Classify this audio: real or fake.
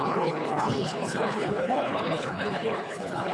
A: fake